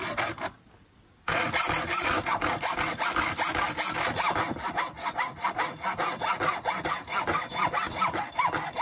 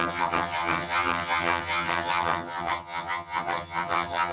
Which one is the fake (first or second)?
second